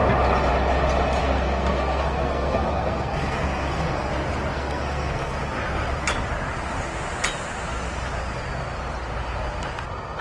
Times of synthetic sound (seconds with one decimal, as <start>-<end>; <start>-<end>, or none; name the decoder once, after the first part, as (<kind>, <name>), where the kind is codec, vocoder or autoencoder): 1.2-4.1 (codec, SNAC); 4.5-5.4